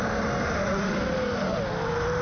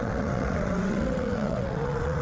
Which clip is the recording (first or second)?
first